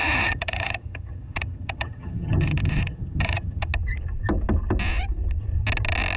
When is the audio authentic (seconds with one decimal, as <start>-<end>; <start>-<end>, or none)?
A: 3.7-6.2